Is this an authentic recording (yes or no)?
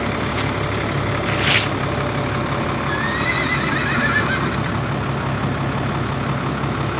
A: yes